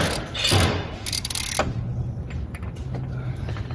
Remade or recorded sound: recorded